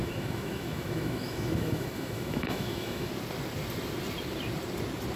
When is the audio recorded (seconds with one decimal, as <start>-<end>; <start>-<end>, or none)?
3.1-5.2